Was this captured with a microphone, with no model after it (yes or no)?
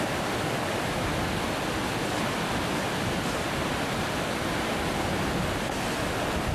yes